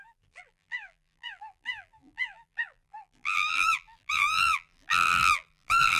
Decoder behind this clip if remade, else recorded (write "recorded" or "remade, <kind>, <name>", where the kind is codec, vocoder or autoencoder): remade, vocoder, BigVGAN v2